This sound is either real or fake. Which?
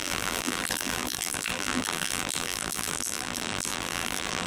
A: fake